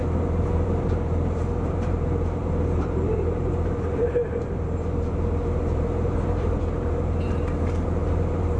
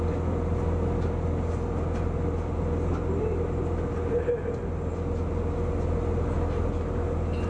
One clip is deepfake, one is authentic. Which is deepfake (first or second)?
first